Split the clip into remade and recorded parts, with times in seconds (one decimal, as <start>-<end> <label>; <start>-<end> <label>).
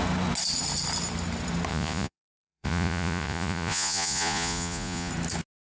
0.0-1.7 recorded; 1.7-5.1 remade; 5.1-5.7 recorded